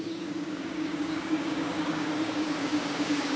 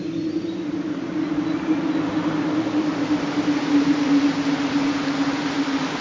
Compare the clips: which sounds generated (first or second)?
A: first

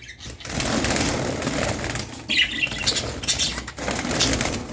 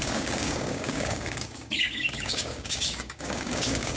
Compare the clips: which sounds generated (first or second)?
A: second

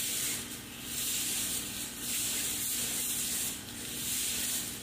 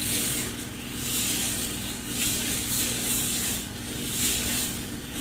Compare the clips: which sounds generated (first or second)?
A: second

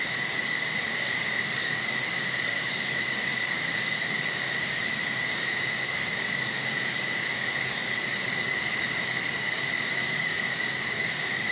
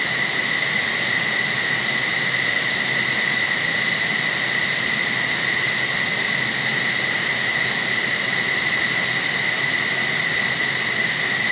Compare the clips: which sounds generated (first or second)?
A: first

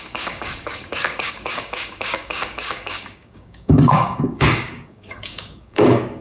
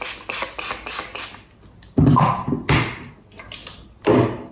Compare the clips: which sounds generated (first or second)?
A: first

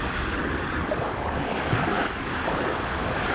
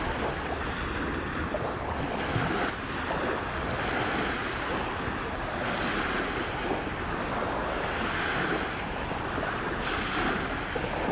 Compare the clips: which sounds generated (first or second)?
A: first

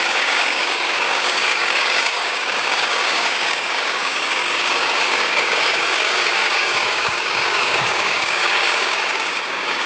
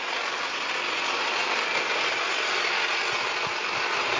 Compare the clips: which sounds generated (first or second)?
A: first